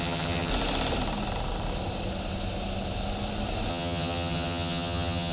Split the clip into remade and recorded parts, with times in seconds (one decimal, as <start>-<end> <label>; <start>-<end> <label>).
0.0-0.5 remade; 0.5-3.7 recorded; 3.7-5.3 remade